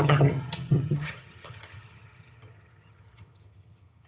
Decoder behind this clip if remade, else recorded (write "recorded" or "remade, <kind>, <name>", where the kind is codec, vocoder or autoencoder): remade, vocoder, HiFi-GAN